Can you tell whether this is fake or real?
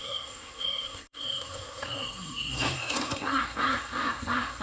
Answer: fake